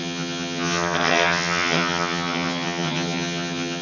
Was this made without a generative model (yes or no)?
no